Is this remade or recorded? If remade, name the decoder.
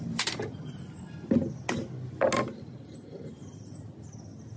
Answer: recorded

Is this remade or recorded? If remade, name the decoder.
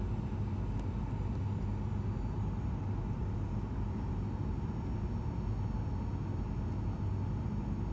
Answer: recorded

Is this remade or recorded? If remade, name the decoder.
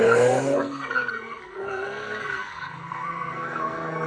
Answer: remade, codec, SNAC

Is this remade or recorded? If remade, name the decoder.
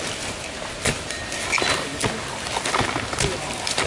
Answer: recorded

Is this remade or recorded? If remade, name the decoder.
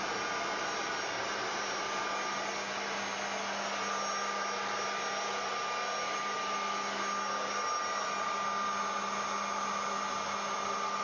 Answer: recorded